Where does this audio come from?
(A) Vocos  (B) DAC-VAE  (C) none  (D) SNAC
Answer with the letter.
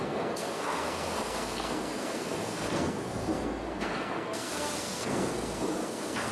D